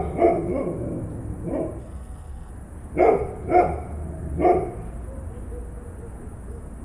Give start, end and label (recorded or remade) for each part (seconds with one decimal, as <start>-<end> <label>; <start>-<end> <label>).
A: 0.0-1.8 recorded; 1.8-2.5 remade; 2.5-6.8 recorded

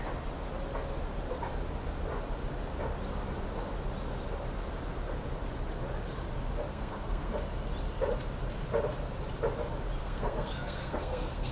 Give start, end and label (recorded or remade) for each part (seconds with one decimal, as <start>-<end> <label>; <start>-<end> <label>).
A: 0.0-6.7 recorded; 6.7-7.3 remade; 7.3-10.0 recorded; 10.0-11.5 remade

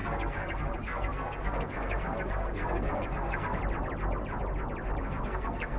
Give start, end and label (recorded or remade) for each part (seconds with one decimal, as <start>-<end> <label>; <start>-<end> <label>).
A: 0.0-3.6 remade; 3.6-5.0 recorded; 5.0-5.8 remade

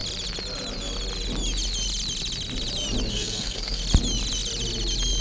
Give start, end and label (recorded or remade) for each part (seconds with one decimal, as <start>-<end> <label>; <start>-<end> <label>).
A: 0.0-3.1 recorded; 3.1-3.8 remade; 3.8-5.2 recorded

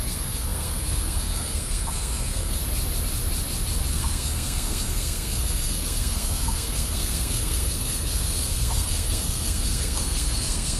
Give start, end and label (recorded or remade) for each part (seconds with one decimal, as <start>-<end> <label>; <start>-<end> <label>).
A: 0.0-2.6 remade; 2.6-3.9 recorded; 3.9-10.8 remade